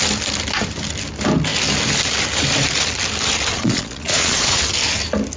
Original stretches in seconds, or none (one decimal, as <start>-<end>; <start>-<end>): 0.0-3.5; 4.6-5.4